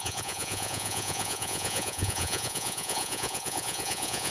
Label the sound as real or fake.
fake